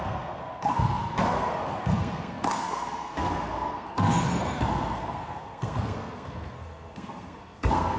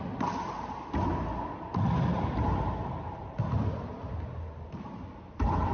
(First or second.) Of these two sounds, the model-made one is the first